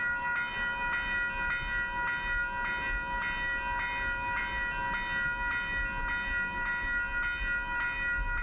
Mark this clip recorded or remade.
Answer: recorded